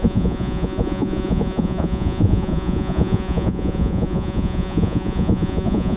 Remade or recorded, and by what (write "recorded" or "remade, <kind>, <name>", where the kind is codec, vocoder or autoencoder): remade, vocoder, Vocos